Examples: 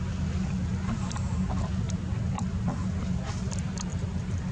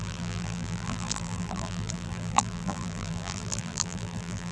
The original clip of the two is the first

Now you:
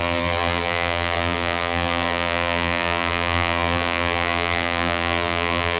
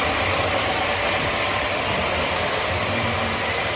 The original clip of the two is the second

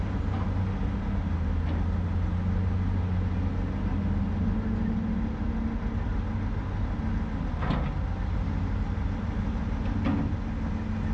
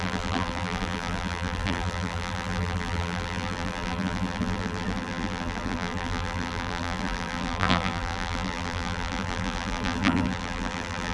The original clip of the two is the first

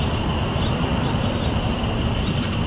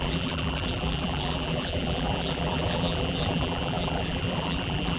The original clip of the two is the first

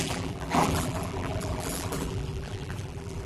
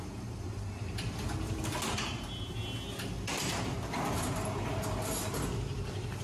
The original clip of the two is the second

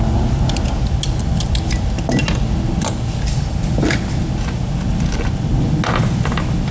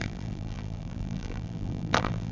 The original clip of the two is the first